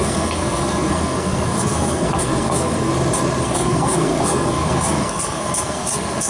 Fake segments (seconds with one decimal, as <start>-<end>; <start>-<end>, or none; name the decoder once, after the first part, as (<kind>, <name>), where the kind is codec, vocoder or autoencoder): 0.0-2.9 (codec, SNAC); 3.4-6.3